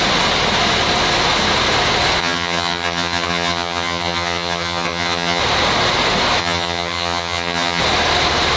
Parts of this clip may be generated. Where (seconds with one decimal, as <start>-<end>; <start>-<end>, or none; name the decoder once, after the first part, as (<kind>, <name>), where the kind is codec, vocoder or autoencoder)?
2.2-5.4 (vocoder, HiFi-GAN); 6.4-7.8